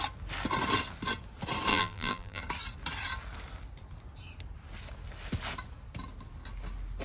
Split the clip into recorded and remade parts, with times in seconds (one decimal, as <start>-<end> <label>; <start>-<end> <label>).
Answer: 0.0-1.7 recorded; 1.7-2.4 remade; 2.4-7.0 recorded